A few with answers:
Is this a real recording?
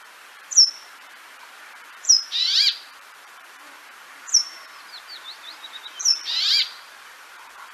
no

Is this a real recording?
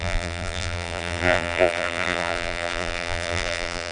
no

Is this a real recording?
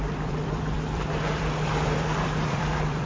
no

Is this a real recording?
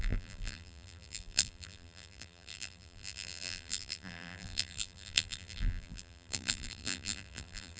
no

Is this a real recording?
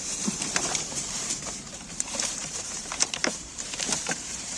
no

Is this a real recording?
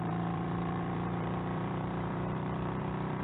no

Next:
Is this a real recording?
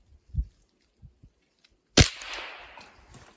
yes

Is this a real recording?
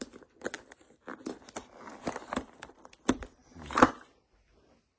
no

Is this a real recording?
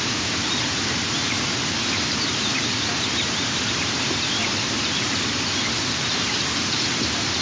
no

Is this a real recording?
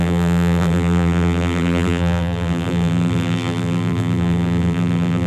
no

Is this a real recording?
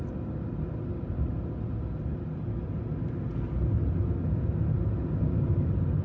yes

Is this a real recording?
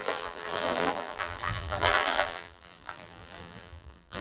no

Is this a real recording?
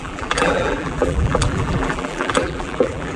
no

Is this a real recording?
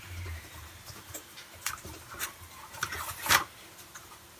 no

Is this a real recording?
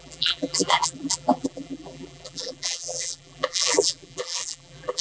no